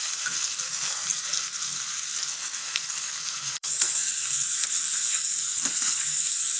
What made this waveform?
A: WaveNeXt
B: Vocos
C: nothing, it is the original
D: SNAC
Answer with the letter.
D